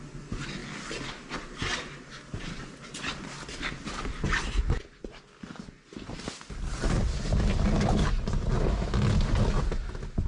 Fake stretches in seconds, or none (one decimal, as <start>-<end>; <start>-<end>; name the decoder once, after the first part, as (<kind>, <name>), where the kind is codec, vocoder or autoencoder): none